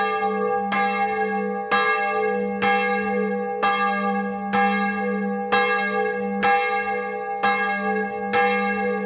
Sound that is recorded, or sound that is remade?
recorded